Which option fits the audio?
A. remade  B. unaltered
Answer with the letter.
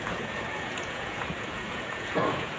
A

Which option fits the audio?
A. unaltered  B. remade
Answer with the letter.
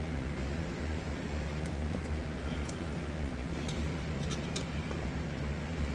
B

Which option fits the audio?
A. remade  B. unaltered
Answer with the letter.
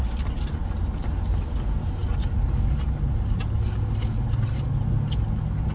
B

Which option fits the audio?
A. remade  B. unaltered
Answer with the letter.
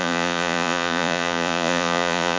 A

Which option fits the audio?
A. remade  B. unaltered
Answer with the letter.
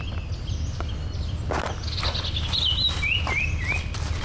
B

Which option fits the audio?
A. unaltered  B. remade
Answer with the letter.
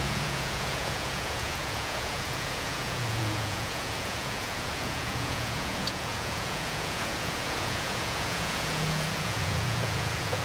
B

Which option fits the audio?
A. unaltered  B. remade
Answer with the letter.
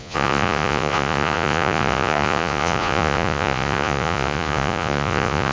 B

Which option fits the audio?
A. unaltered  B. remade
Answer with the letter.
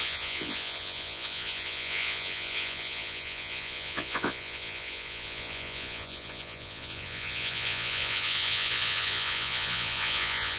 B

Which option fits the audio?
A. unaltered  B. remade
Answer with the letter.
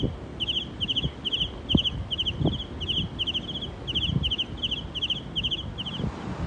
A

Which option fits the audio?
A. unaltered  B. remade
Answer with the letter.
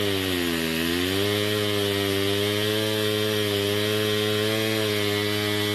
A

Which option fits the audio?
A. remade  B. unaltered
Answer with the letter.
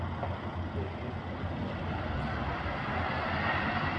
B